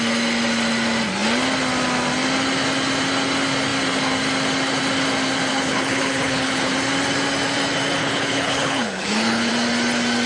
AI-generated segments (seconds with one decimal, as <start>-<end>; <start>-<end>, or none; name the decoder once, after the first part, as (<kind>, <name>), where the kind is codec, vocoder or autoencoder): 5.5-6.7 (codec, HILCodec); 8.0-9.5